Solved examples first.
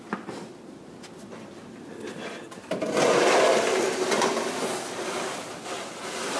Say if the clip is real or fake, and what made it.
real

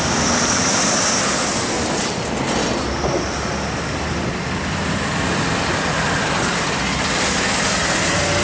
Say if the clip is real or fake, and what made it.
real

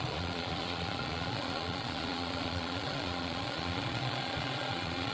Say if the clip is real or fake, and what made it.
fake, vocoder, Vocos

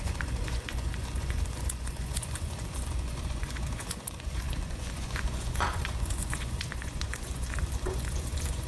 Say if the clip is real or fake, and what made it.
fake, vocoder, Vocos